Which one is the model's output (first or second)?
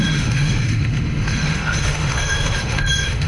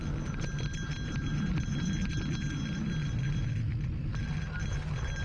first